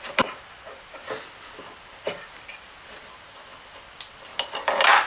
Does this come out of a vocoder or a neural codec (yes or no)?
no